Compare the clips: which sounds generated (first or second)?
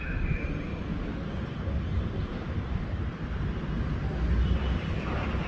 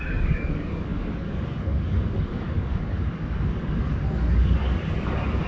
second